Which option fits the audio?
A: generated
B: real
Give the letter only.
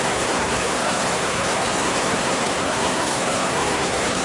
A